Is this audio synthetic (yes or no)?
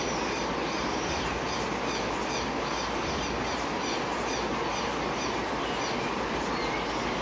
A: no